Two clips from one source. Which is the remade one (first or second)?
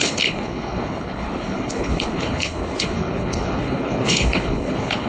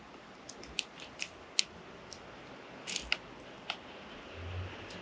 first